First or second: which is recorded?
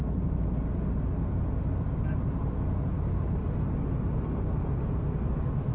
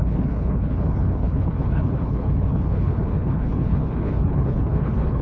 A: first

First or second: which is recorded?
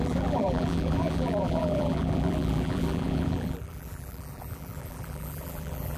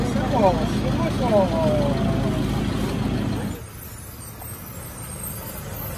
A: second